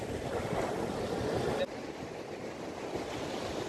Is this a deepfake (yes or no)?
no